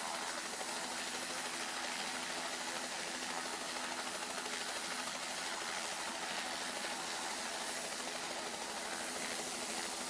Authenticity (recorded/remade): recorded